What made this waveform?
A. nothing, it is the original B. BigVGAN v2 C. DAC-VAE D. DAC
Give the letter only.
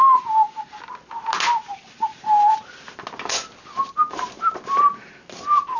A